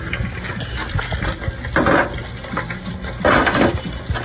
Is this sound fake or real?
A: real